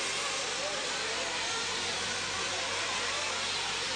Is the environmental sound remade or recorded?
recorded